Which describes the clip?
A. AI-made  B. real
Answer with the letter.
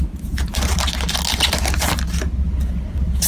B